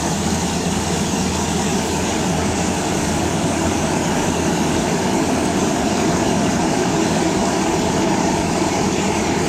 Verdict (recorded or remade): remade